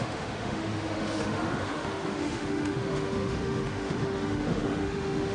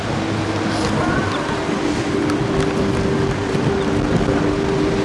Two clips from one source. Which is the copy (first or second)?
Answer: first